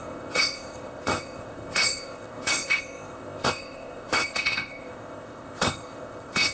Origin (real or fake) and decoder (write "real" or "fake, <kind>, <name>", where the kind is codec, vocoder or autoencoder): fake, codec, ZipCodec